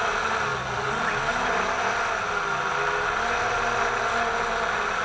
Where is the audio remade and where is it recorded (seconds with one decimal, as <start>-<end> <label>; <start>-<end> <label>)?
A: 0.0-5.0 recorded